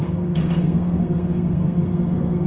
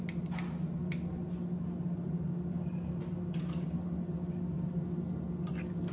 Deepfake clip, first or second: first